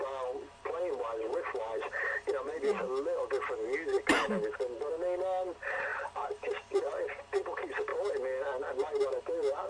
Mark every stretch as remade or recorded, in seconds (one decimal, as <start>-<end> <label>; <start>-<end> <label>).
0.0-2.8 remade; 2.8-4.9 recorded; 4.9-7.9 remade; 7.9-8.7 recorded; 8.7-9.7 remade